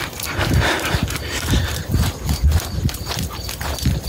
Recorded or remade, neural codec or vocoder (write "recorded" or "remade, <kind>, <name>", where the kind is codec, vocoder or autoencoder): recorded